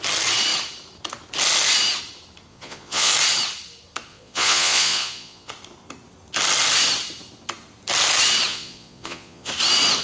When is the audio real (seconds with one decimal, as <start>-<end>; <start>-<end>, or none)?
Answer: 0.0-2.5; 3.1-4.1; 5.5-8.5; 9.5-10.0